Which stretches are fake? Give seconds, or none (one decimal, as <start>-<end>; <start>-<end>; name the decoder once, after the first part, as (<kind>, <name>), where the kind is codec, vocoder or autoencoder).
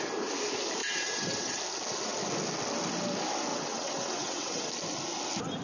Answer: 0.8-1.6 (vocoder, WaveNeXt); 3.5-4.7